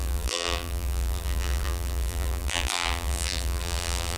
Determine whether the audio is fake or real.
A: fake